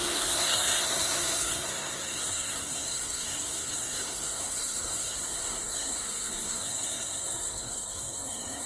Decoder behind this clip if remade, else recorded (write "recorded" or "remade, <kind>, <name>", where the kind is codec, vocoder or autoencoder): remade, codec, SNAC